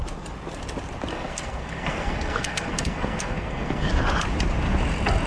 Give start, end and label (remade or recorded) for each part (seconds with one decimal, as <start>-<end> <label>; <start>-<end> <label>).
0.0-1.1 recorded; 1.1-3.9 remade; 3.9-5.3 recorded